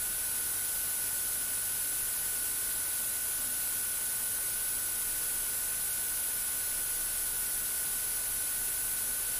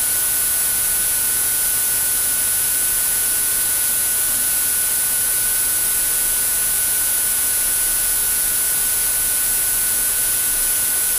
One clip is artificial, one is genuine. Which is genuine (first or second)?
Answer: first